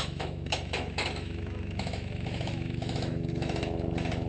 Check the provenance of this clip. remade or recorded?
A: remade